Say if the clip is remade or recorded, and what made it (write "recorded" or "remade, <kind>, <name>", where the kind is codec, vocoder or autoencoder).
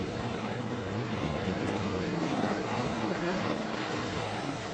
remade, codec, SNAC